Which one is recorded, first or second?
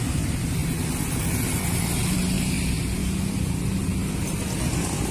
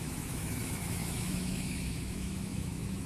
first